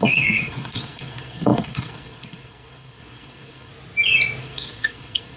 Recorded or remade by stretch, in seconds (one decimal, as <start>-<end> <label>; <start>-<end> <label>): 0.0-3.7 remade; 3.7-4.4 recorded; 4.4-5.4 remade